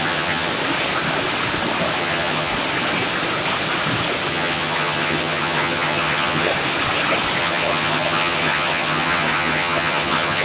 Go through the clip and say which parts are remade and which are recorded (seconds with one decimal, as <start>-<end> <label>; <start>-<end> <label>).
0.0-0.5 remade; 0.5-2.0 recorded; 2.0-2.5 remade; 2.5-4.3 recorded; 4.3-6.5 remade; 6.5-7.4 recorded; 7.4-10.4 remade